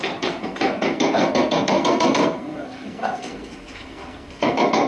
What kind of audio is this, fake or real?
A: fake